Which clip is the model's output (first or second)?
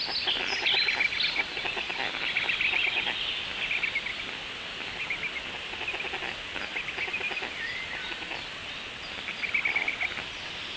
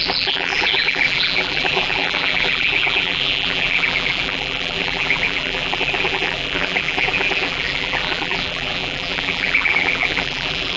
second